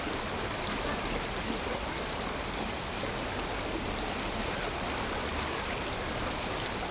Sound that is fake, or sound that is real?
real